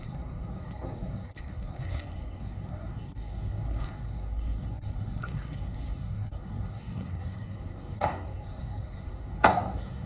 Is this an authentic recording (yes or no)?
no